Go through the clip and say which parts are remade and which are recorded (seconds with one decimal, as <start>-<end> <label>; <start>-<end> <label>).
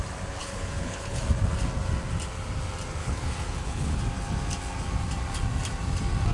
0.0-0.4 recorded; 0.4-1.2 remade; 1.2-3.0 recorded; 3.0-4.0 remade; 4.0-6.3 recorded